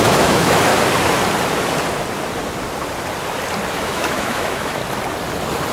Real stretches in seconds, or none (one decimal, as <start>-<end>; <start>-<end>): 0.7-3.7; 4.8-5.7